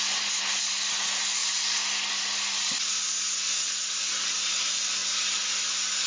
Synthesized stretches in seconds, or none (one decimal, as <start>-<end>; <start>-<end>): none